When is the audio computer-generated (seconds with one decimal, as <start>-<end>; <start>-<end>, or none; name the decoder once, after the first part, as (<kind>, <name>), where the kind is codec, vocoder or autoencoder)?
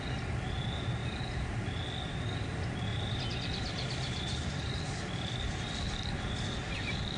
1.0-1.5 (vocoder, BigVGAN v2); 2.9-5.4